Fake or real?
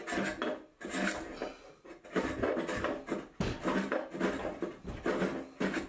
real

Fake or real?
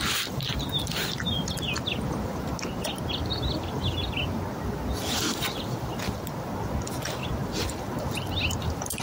real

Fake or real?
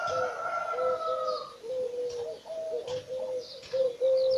real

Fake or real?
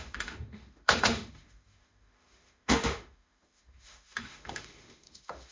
fake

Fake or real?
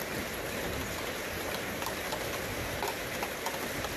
real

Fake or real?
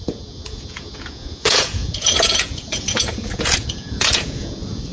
fake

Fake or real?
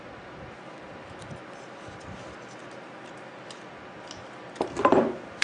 real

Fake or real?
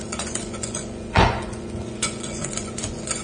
fake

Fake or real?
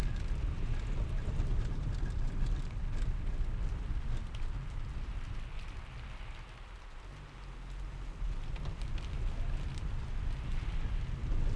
real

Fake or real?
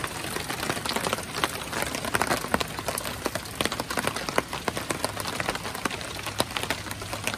real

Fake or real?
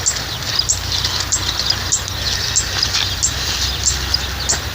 real